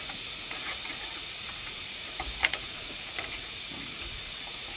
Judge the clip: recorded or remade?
remade